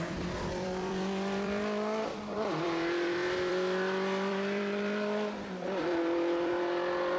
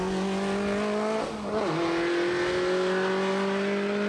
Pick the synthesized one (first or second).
first